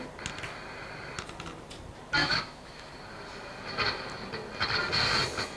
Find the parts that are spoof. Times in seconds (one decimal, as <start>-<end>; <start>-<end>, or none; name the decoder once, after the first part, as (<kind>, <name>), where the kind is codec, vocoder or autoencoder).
2.2-2.9 (autoencoder, DAC-VAE)